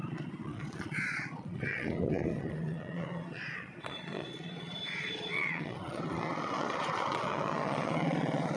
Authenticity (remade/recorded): remade